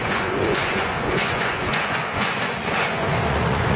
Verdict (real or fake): fake